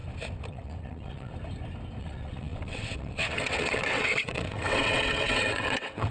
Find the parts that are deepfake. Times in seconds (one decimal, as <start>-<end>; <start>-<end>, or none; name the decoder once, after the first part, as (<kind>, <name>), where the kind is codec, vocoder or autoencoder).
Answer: 0.5-1.3 (vocoder, WaveNeXt); 2.0-6.1